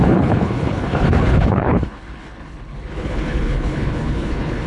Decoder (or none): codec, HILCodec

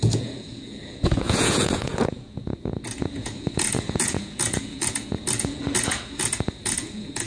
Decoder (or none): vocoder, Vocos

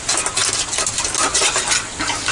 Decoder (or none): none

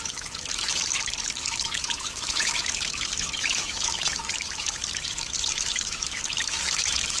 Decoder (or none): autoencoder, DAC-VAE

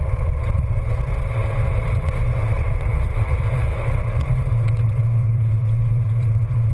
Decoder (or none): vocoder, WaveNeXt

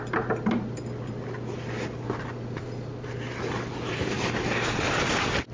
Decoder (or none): none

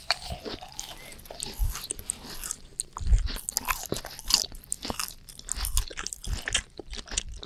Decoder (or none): none